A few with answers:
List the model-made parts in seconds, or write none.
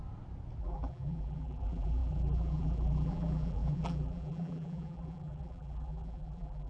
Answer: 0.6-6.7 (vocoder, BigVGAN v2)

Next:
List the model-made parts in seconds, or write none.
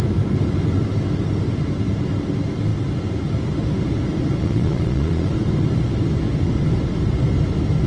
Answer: 4.4-5.3 (vocoder, Vocos)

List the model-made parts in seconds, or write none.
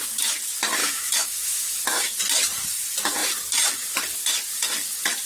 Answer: 0.8-2.0 (autoencoder, DAC-VAE)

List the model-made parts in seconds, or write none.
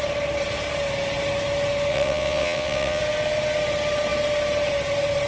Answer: 1.9-3.0 (vocoder, WaveNeXt)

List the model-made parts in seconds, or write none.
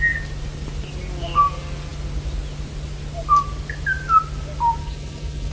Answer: 4.8-5.5 (codec, HILCodec)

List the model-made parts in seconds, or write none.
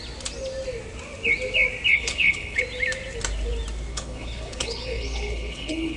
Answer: 1.9-2.6 (codec, HILCodec); 3.9-6.0